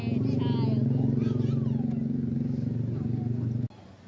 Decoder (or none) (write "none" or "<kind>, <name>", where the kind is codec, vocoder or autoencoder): none